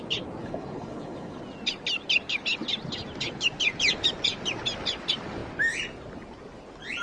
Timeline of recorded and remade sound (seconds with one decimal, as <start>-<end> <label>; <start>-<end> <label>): 0.0-0.4 recorded; 0.4-1.4 remade; 1.4-7.0 recorded